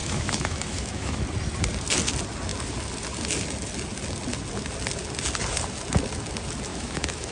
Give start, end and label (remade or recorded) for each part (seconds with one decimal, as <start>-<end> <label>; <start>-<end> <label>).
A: 0.0-1.2 remade; 1.2-6.7 recorded; 6.7-7.3 remade